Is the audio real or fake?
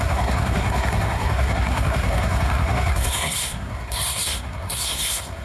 fake